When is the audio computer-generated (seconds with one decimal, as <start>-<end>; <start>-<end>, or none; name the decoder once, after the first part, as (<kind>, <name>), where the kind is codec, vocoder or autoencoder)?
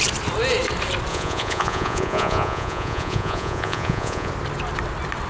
1.1-4.3 (vocoder, Vocos)